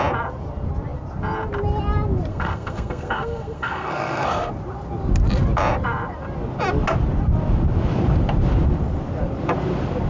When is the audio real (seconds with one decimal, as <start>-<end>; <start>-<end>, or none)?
0.0-2.3; 4.5-10.1